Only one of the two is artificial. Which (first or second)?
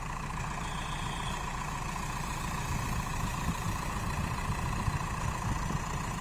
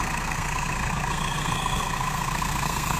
second